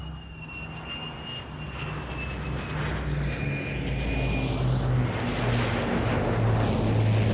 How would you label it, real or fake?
real